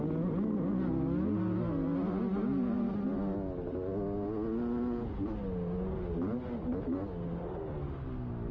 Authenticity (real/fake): real